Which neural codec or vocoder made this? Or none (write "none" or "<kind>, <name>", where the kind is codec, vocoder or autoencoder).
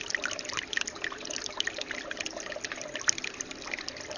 none